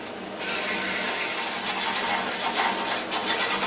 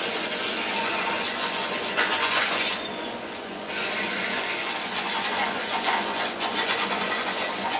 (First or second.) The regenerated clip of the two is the second